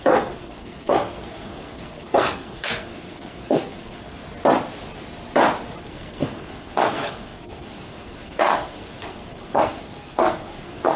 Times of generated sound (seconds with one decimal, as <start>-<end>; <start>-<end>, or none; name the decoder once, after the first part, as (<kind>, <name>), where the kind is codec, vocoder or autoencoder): 0.0-4.2 (codec, SNAC); 5.8-11.0